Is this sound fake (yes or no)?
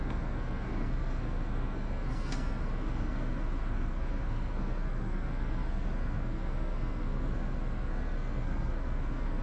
yes